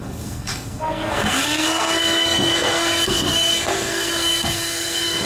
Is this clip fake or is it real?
fake